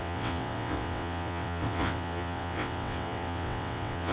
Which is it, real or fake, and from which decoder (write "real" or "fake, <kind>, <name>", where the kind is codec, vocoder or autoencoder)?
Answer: fake, vocoder, WaveNeXt